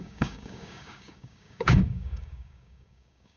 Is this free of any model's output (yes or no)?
no